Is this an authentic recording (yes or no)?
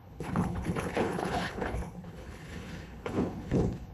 no